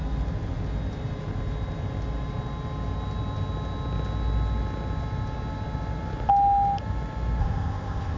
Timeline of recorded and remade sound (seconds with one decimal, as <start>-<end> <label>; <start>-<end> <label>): 0.0-7.4 recorded; 7.4-8.2 remade